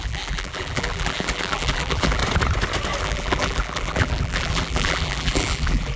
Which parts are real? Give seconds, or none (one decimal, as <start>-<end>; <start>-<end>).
2.2-3.0